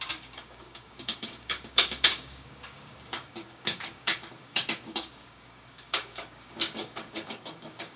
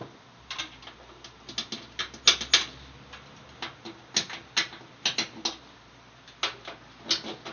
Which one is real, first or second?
second